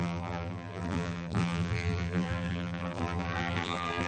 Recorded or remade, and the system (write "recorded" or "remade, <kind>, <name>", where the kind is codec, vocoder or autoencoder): remade, vocoder, BigVGAN v2